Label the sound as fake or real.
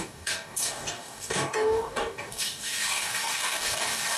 fake